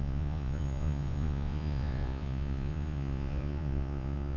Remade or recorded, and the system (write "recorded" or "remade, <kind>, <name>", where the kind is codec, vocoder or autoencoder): remade, vocoder, Vocos